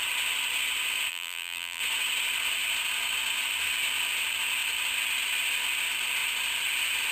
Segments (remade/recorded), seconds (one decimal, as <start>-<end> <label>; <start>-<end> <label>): 0.0-1.1 recorded; 1.1-1.8 remade; 1.8-7.1 recorded